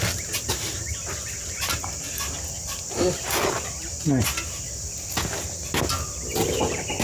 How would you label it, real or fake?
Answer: real